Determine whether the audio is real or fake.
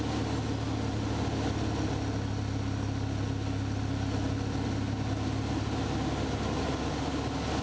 real